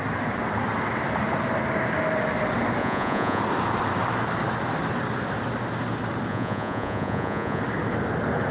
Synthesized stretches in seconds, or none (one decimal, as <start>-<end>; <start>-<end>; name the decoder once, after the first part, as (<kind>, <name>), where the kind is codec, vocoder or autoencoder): 2.8-3.4 (vocoder, Vocos); 6.3-7.6